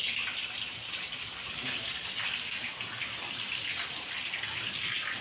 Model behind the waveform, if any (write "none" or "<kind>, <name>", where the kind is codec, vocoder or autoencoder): none